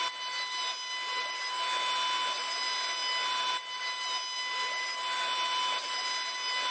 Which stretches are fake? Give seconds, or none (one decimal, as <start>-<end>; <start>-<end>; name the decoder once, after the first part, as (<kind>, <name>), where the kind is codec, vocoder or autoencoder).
none